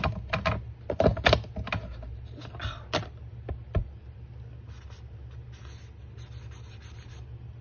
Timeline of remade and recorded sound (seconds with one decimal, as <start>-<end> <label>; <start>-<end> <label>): 0.0-7.6 recorded